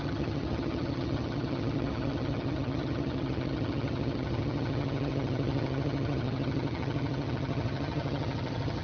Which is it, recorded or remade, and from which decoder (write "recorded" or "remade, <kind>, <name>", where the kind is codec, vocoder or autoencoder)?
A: remade, vocoder, HiFi-GAN